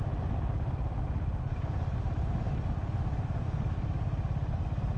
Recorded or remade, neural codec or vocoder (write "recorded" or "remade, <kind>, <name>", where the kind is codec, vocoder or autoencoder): recorded